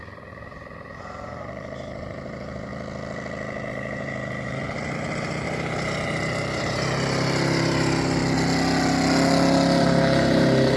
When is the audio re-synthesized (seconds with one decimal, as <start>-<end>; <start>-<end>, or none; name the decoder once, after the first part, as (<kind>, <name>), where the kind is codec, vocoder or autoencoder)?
0.0-2.7 (vocoder, BigVGAN v2); 3.7-8.2; 9.8-10.8

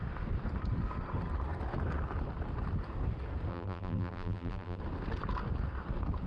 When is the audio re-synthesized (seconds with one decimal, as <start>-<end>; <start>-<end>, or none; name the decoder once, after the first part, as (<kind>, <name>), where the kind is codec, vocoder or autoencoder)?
3.5-4.8 (vocoder, BigVGAN v2)